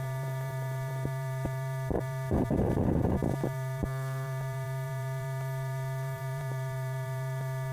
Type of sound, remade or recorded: remade